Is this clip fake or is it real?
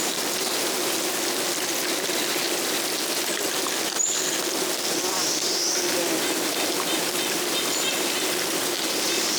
real